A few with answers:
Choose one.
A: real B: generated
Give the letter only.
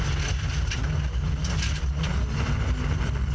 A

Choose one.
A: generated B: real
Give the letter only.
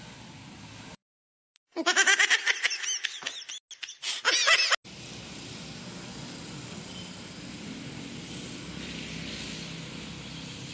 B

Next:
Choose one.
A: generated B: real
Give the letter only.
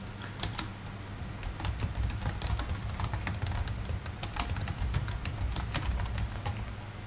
B